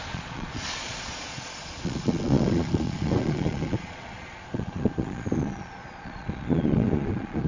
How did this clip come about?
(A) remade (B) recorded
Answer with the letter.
A